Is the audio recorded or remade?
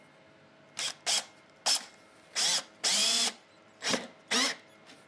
recorded